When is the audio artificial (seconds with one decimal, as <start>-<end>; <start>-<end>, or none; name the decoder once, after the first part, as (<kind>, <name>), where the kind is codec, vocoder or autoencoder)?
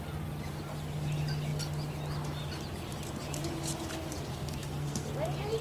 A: 4.3-5.1 (codec, SNAC)